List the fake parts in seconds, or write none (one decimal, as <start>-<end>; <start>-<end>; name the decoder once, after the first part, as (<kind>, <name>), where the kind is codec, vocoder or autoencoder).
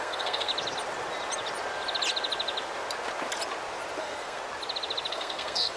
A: 0.0-0.5 (codec, SNAC); 4.0-4.4; 5.1-5.8